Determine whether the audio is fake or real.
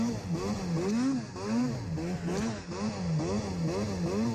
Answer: real